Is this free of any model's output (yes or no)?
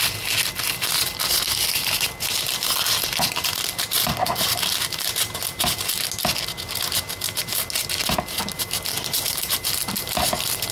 yes